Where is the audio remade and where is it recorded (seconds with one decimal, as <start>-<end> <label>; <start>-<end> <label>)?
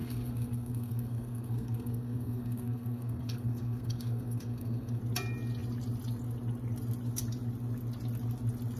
0.0-5.0 remade; 5.0-8.8 recorded